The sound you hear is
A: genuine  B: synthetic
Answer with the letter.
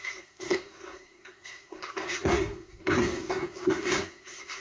B